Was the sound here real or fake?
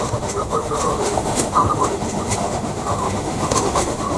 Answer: fake